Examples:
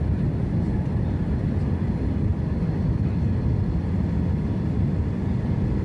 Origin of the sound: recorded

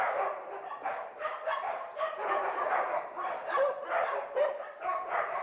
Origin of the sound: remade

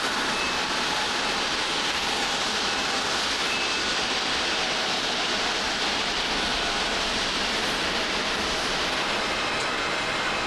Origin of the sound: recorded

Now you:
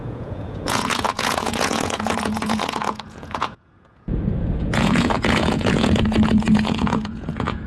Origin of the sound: remade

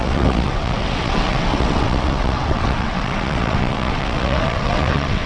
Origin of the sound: remade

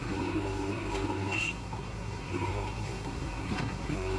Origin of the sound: remade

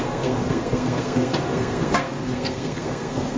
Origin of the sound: remade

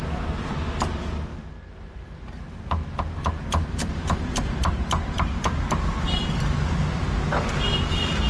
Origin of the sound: recorded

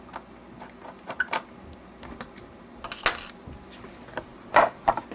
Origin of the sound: recorded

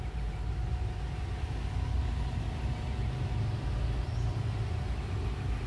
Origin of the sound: recorded